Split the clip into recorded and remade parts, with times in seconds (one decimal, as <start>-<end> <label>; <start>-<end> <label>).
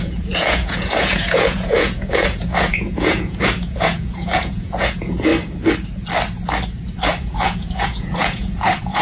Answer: 0.0-5.3 remade; 5.3-7.2 recorded; 7.2-9.0 remade